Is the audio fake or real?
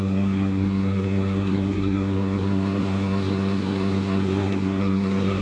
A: fake